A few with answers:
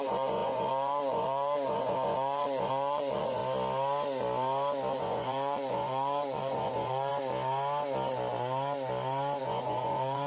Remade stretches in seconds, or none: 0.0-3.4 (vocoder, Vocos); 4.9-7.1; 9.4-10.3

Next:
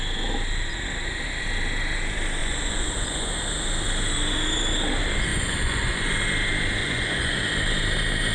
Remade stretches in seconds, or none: 2.4-3.3 (vocoder, Vocos); 5.3-6.0; 6.8-7.4

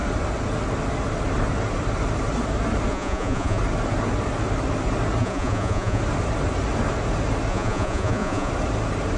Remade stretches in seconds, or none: 2.9-3.6 (vocoder, Vocos); 5.2-6.0; 7.5-8.5

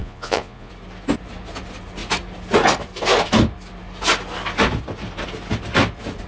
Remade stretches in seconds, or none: 0.0-0.7 (vocoder, Vocos)

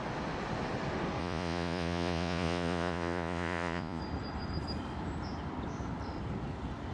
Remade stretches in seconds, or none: 1.2-4.0 (vocoder, Vocos)